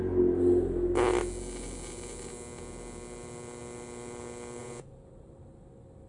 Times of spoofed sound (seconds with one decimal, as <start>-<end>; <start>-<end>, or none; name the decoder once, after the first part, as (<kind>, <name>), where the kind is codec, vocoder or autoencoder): 4.6-5.1 (vocoder, Vocos)